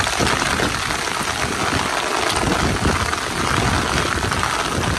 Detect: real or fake real